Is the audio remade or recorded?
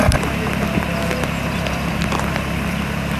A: recorded